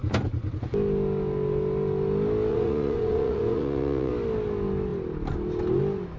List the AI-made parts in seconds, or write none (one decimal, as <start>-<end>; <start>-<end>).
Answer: 2.5-4.1